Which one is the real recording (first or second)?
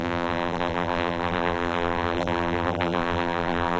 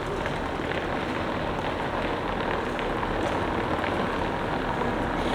second